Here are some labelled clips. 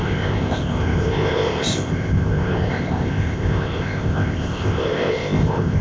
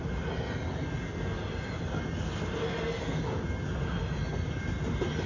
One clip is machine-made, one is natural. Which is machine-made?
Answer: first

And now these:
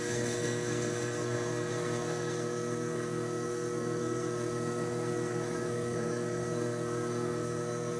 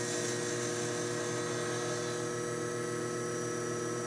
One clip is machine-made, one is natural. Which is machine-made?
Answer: first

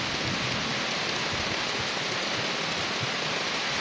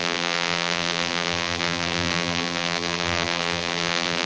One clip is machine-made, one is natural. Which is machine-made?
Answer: second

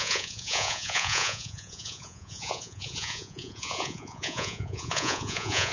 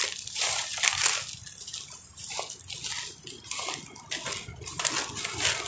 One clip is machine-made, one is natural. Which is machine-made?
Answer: first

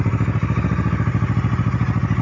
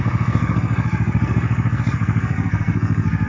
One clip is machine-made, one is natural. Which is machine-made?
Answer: second